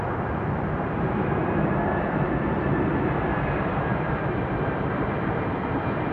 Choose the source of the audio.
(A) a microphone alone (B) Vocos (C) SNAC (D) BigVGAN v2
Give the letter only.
D